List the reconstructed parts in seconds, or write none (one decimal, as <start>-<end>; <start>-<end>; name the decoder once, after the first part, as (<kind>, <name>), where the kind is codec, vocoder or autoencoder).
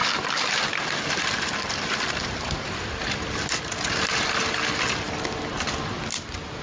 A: none